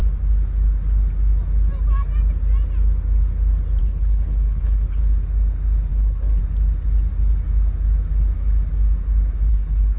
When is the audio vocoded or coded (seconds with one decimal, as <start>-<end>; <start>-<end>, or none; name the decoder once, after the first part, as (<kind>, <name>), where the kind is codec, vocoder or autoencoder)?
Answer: 3.8-5.0 (codec, HILCodec); 5.9-6.4; 9.5-10.0